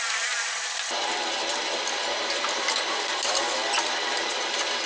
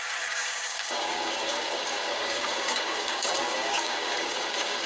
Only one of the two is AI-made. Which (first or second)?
second